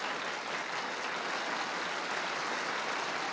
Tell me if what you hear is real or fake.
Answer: real